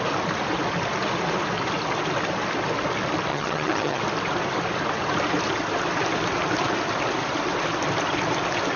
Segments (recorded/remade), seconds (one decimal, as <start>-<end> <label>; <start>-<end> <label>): 0.0-3.3 recorded; 3.3-4.0 remade; 4.0-8.8 recorded